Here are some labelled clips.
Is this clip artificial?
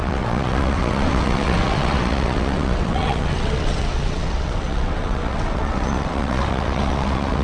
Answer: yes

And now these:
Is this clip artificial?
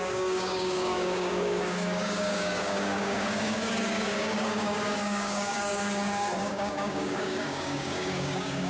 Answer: yes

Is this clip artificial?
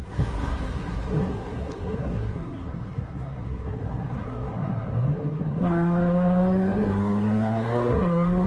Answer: yes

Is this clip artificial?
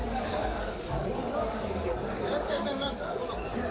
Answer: yes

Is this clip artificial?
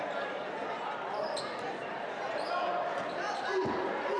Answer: no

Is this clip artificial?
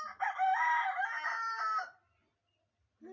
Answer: no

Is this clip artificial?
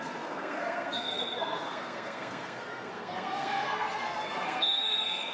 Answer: yes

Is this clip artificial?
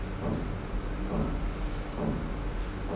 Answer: no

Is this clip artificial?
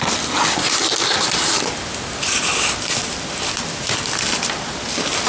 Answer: no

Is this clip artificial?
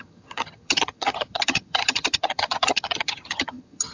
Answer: yes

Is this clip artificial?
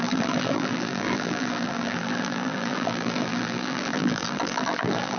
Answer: yes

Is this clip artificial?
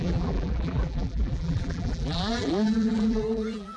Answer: yes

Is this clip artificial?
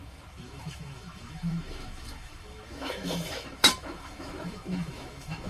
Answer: yes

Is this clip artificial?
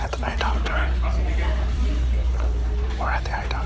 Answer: yes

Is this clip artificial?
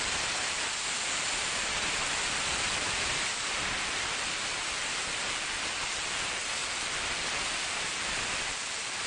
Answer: yes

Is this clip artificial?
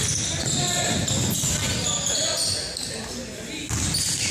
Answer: no